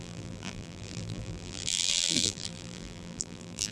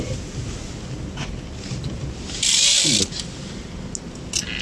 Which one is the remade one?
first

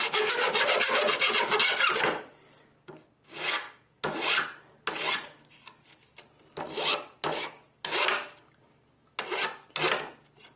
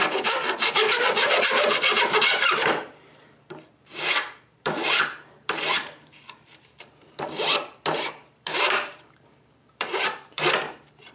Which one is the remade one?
second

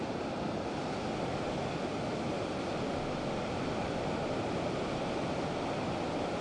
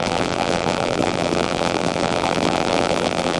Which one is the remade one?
second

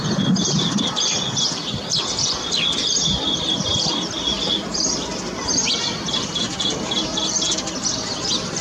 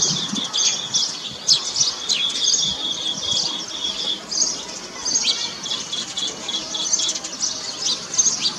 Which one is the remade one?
first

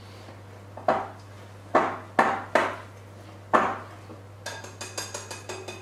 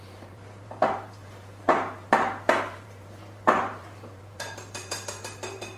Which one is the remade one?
second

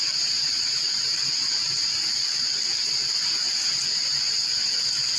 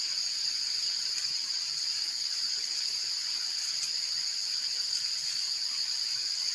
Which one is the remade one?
second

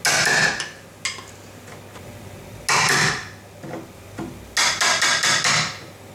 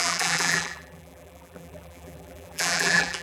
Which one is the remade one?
second